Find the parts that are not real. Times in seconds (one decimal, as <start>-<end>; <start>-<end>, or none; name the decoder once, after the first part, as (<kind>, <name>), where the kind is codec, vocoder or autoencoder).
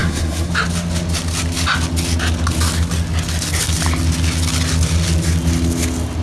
0.0-0.5 (codec, SNAC)